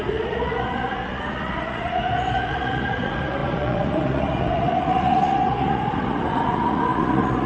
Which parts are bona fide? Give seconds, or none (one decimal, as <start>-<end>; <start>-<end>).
none